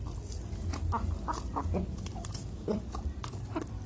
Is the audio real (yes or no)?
yes